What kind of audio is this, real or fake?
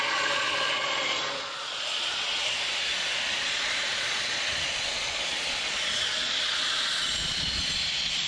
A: fake